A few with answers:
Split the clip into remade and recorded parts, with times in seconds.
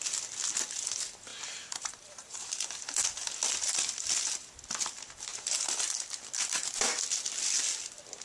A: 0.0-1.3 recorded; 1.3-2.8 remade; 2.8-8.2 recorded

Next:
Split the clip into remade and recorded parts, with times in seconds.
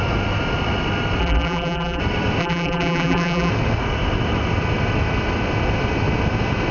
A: 0.0-1.2 recorded; 1.2-2.0 remade; 2.0-2.4 recorded; 2.4-3.5 remade; 3.5-6.7 recorded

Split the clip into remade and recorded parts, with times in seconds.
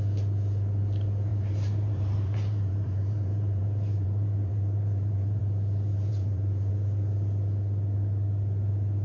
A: 0.0-1.3 recorded; 1.3-5.4 remade; 5.4-5.9 recorded; 5.9-6.7 remade; 6.7-9.0 recorded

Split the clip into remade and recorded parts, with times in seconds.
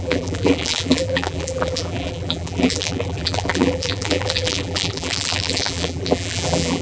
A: 0.0-6.8 remade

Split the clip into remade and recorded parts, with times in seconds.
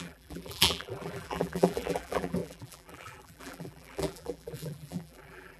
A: 0.0-5.6 remade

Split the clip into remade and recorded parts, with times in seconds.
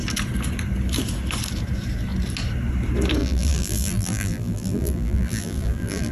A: 0.0-3.2 recorded; 3.2-6.1 remade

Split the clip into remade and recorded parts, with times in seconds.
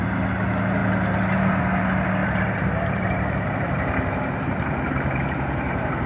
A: 0.0-2.2 recorded; 2.2-6.1 remade